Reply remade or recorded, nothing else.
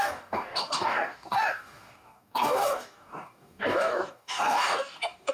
remade